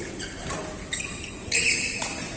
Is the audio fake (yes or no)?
no